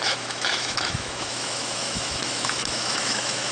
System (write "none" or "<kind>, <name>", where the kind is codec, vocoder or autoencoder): autoencoder, DAC-VAE